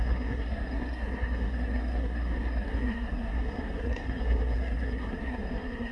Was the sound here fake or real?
fake